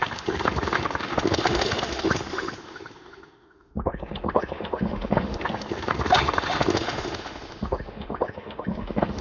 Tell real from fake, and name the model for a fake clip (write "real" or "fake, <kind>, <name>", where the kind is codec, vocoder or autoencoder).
fake, autoencoder, DAC-VAE